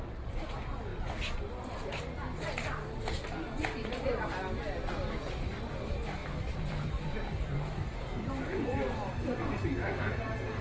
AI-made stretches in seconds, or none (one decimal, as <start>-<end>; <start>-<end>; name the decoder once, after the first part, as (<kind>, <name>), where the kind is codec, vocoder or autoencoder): 6.2-9.1 (vocoder, BigVGAN v2)